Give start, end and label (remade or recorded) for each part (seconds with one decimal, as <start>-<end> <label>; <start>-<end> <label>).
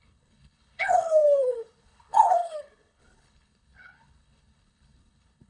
0.0-5.5 remade